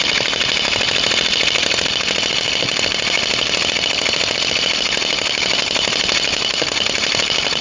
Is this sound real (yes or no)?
no